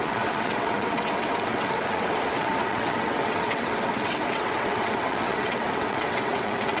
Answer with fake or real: fake